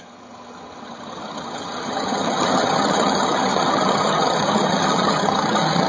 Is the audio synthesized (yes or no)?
yes